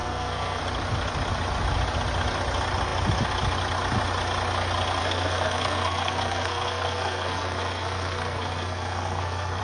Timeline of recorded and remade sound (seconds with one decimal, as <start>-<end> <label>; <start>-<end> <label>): 0.0-0.6 remade; 0.6-5.0 recorded; 5.0-9.6 remade